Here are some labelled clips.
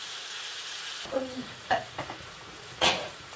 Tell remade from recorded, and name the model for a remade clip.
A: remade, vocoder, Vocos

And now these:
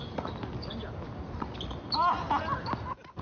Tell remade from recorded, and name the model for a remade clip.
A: recorded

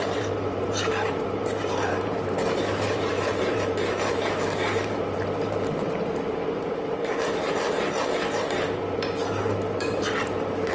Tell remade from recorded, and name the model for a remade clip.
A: remade, vocoder, BigVGAN v2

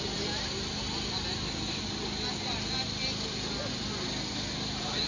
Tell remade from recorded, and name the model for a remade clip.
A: recorded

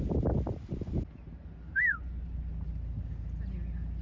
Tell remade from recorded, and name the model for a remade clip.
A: recorded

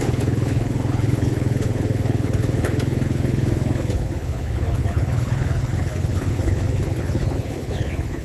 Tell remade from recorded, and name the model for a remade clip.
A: remade, codec, HILCodec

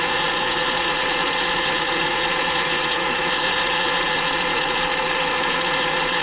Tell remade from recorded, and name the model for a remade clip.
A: remade, vocoder, Vocos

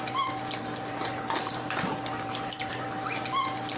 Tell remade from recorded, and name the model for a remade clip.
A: remade, vocoder, BigVGAN v2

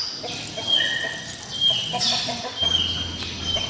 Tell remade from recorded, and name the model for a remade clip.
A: recorded